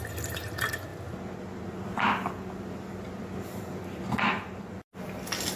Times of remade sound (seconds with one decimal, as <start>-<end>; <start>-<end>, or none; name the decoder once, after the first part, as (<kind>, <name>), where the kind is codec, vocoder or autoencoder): none

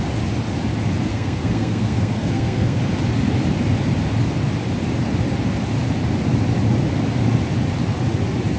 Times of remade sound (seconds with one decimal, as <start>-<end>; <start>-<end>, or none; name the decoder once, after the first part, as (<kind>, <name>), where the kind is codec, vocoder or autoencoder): 1.1-2.8 (codec, SNAC)

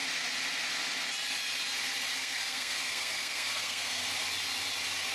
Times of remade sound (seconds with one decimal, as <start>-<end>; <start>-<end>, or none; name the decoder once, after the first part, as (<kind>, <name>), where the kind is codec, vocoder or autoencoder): 2.1-4.0 (codec, SNAC)

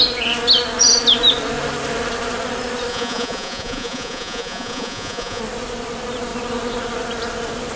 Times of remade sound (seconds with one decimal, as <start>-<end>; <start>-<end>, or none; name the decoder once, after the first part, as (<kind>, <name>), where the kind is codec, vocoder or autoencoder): 2.9-5.4 (vocoder, Vocos)